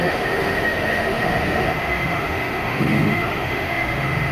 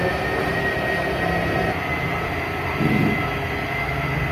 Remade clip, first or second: first